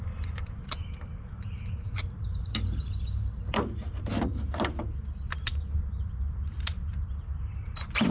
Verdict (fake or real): fake